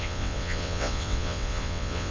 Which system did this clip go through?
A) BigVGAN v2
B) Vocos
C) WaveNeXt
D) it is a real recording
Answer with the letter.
C